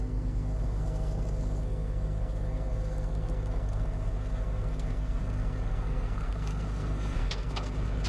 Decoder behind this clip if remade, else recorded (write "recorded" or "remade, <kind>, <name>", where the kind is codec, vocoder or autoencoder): remade, codec, SNAC